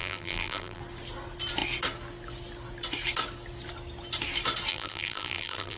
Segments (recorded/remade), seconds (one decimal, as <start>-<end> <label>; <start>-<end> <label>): 0.0-0.8 remade; 0.8-4.7 recorded; 4.7-5.8 remade